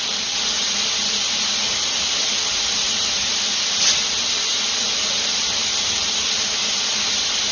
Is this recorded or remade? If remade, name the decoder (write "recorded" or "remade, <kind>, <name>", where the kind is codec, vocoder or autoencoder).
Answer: recorded